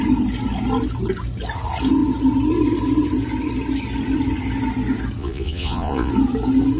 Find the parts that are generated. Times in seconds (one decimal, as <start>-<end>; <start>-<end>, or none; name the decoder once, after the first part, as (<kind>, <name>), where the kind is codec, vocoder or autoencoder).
5.2-6.1 (vocoder, Vocos)